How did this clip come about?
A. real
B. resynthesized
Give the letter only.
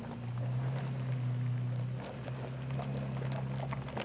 A